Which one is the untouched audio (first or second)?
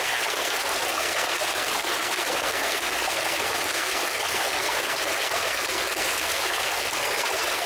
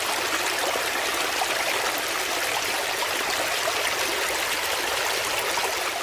second